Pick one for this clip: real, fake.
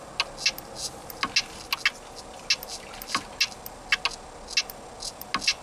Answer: real